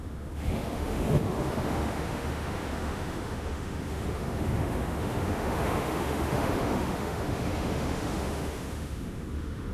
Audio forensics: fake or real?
fake